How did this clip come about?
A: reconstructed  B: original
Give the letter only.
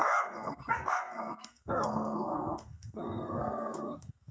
A